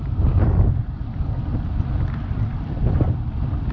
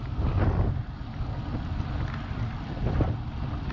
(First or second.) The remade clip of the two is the first